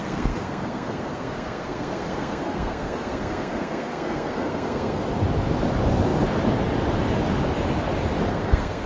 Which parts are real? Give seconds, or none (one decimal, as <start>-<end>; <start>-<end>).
5.0-8.3